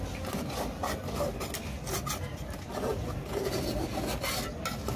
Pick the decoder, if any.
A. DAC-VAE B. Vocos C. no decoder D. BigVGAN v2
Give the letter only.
C